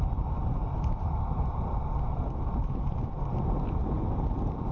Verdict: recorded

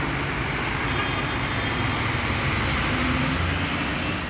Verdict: recorded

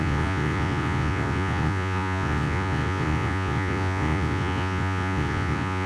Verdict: remade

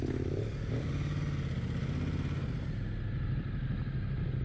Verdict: recorded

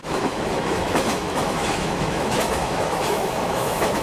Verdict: remade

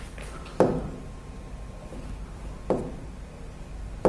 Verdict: recorded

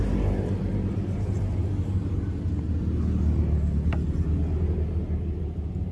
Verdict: recorded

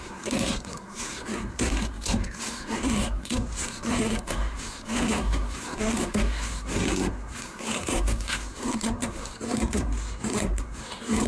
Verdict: remade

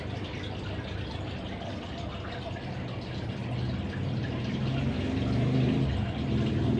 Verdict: remade